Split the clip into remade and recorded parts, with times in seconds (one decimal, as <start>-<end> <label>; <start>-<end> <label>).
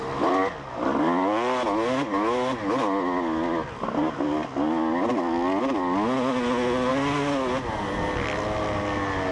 0.0-9.3 recorded